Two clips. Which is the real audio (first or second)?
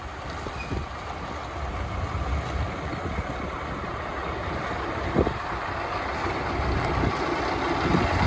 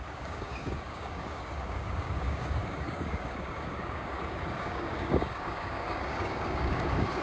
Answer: first